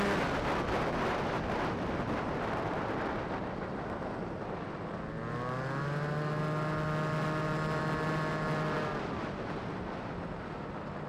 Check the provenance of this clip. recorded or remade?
recorded